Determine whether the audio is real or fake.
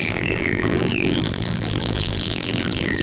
fake